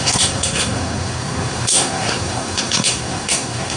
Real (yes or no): no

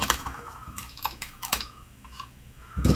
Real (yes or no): no